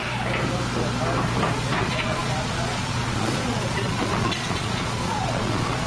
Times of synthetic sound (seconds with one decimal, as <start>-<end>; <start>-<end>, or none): 1.8-5.9